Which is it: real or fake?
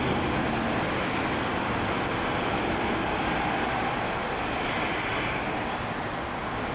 real